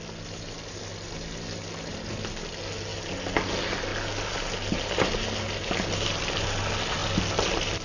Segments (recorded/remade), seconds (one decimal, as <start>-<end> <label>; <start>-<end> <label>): 0.0-7.8 recorded